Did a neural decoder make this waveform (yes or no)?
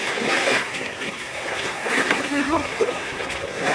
yes